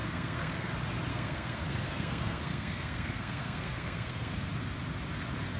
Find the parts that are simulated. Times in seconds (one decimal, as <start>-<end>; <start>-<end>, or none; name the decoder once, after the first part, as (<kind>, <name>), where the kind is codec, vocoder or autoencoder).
0.0-0.7 (codec, SNAC); 1.1-4.5